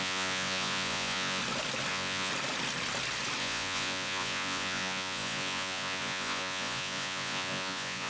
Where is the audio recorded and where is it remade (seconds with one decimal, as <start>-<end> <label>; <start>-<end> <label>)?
0.0-1.4 remade; 1.4-1.9 recorded; 1.9-2.3 remade; 2.3-3.4 recorded; 3.4-8.1 remade